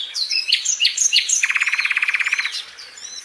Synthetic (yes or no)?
yes